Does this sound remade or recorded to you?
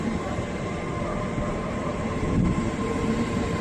remade